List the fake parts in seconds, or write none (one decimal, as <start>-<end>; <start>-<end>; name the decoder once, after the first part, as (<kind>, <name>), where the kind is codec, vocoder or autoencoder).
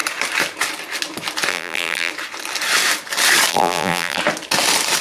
1.5-2.1 (vocoder, BigVGAN v2); 3.5-4.2